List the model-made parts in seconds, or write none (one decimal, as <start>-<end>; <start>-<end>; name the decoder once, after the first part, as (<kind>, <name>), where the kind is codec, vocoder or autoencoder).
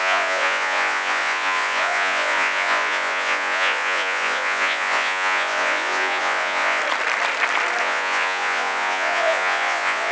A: 0.0-6.8 (vocoder, Vocos); 7.8-10.1